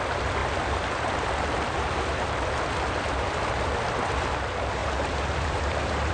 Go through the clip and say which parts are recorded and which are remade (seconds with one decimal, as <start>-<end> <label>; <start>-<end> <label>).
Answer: 0.0-6.1 remade